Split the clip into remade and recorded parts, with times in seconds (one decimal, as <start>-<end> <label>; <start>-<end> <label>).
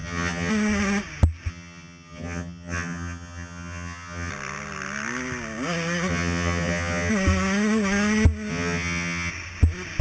0.0-0.5 remade; 0.5-1.5 recorded; 1.5-4.3 remade; 4.3-6.1 recorded; 6.1-7.1 remade; 7.1-8.5 recorded; 8.5-9.3 remade; 9.3-10.0 recorded